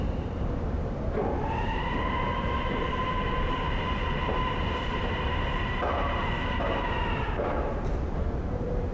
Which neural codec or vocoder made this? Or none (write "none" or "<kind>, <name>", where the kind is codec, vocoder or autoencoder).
vocoder, BigVGAN v2